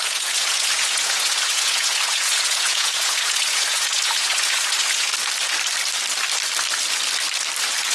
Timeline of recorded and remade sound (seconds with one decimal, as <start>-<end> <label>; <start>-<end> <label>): 0.0-5.1 remade; 5.1-7.9 recorded